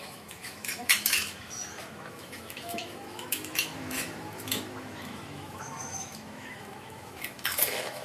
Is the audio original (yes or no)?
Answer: no